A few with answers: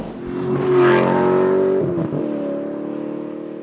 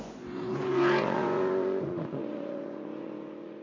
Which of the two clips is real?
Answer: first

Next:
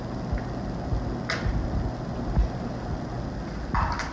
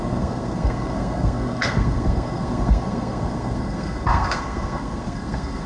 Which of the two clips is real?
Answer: first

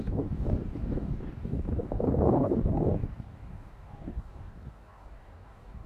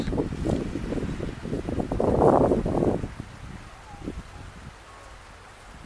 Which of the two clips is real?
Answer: second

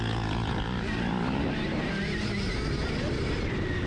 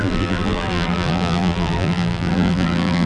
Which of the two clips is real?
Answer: first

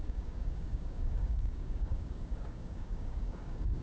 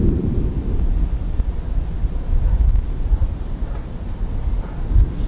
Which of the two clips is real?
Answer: second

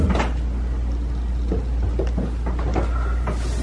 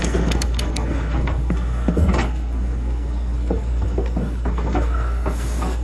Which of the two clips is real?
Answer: first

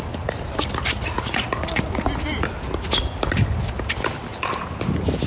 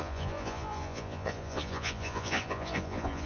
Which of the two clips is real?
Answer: first